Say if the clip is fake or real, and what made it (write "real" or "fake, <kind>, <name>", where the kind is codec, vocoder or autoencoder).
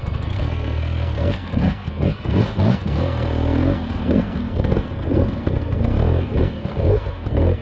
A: fake, codec, SNAC